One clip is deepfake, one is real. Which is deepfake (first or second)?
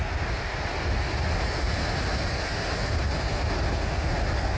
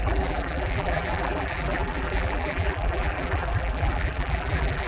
second